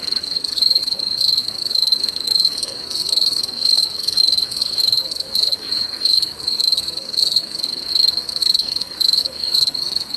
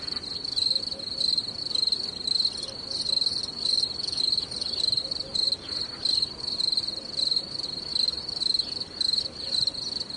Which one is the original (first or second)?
second